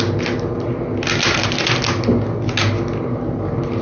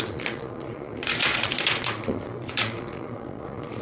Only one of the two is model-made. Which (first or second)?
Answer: second